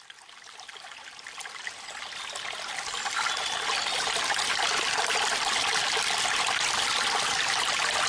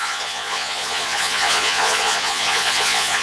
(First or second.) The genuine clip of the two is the first